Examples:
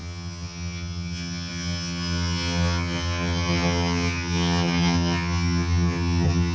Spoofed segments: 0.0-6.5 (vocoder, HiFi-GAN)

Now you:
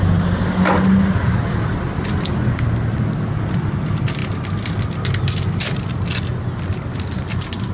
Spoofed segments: none